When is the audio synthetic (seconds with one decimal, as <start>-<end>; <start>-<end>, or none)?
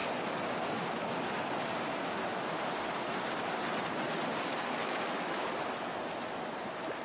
4.8-5.5